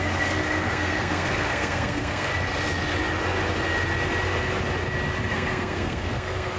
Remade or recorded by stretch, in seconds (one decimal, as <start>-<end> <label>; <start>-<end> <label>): 0.0-2.3 remade; 2.3-5.3 recorded; 5.3-6.6 remade